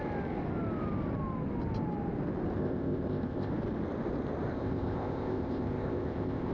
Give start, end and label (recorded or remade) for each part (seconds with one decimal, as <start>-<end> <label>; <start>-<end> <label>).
0.0-2.6 recorded; 2.6-3.5 remade; 3.5-4.5 recorded; 4.5-6.5 remade